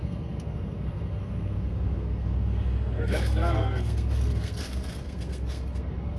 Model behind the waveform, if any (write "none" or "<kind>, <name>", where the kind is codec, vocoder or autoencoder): codec, SNAC